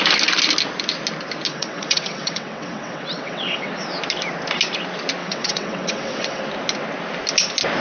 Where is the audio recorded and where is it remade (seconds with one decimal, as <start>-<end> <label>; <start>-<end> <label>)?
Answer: 0.0-1.5 recorded; 1.5-3.7 remade; 3.7-5.2 recorded; 5.2-6.4 remade; 6.4-7.8 recorded